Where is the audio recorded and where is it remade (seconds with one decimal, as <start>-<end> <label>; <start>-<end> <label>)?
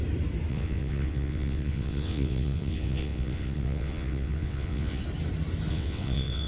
0.0-0.5 recorded; 0.5-5.0 remade; 5.0-5.7 recorded; 5.7-6.5 remade